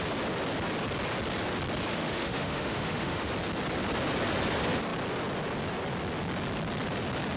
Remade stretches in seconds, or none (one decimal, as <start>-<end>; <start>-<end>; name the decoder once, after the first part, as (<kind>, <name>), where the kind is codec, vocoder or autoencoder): 1.9-3.3 (autoencoder, DAC-VAE)

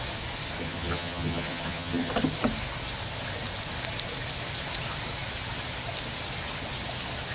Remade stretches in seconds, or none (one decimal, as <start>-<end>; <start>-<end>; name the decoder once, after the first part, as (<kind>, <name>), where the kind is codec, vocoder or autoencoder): 0.6-2.1 (vocoder, HiFi-GAN)

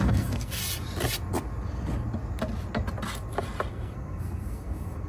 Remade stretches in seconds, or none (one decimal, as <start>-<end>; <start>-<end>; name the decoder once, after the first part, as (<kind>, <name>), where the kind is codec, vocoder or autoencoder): 0.0-0.6 (codec, SNAC); 3.7-5.1